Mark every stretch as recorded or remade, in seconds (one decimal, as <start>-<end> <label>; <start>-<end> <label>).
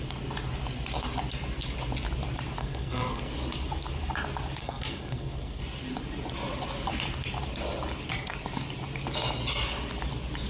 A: 0.0-2.6 recorded; 2.6-3.3 remade; 3.3-4.6 recorded; 4.6-5.6 remade; 5.6-10.5 recorded